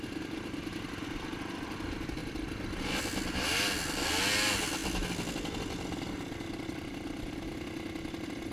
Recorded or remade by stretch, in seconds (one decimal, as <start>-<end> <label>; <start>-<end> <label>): 0.0-8.5 recorded